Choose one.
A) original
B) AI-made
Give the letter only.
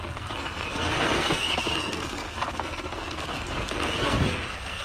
B